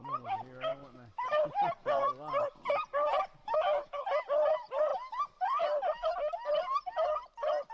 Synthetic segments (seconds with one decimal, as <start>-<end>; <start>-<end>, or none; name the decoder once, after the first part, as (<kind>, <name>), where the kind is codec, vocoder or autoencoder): 3.4-4.0 (autoencoder, DAC-VAE)